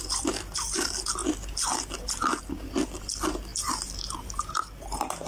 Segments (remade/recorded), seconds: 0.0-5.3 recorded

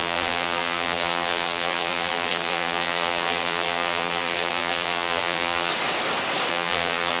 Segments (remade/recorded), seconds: 0.0-5.7 remade; 5.7-6.5 recorded; 6.5-7.2 remade

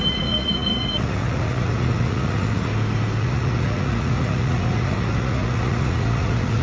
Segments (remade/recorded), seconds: 0.0-2.7 remade; 2.7-3.2 recorded; 3.2-6.6 remade

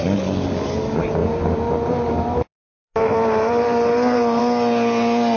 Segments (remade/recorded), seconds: 0.0-1.2 recorded; 1.2-4.4 remade; 4.4-5.4 recorded

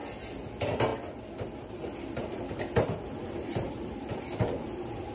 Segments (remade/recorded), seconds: 0.0-3.2 recorded; 3.2-4.5 remade; 4.5-5.1 recorded